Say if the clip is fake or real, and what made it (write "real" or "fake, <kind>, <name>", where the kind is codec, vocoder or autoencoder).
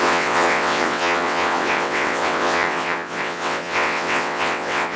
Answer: fake, vocoder, WaveNeXt